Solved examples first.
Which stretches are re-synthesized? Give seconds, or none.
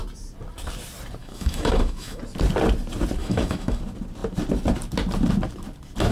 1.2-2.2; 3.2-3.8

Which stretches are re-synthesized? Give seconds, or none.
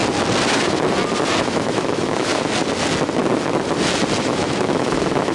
1.4-2.3; 4.2-5.3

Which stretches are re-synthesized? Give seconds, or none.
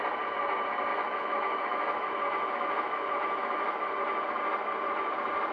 0.9-4.0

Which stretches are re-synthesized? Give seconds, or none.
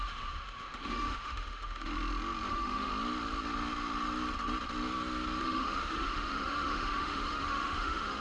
0.0-1.9; 2.5-2.9; 5.4-8.2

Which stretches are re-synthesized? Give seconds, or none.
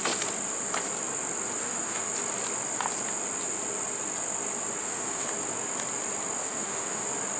1.6-2.1; 4.8-5.3; 6.4-7.0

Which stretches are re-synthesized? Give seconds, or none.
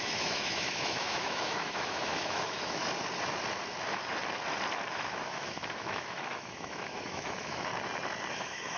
0.0-2.8; 4.9-7.7; 8.3-8.8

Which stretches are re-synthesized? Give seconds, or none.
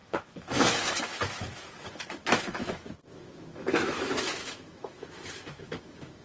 0.0-6.2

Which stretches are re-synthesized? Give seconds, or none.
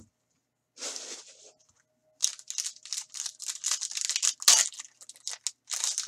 none